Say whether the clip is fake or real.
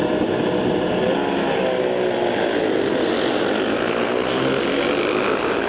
real